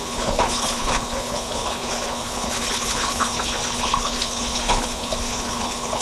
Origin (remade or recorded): remade